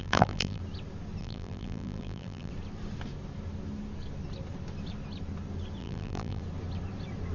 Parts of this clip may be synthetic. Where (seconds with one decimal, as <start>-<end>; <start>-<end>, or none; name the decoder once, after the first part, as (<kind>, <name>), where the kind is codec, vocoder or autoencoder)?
0.0-0.6 (vocoder, BigVGAN v2); 1.2-2.5; 5.8-6.4